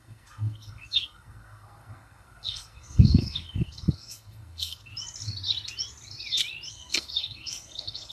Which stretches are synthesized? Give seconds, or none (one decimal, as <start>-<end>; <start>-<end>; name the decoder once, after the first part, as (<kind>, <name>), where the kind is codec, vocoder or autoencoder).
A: 0.0-4.9 (codec, SNAC); 6.7-8.1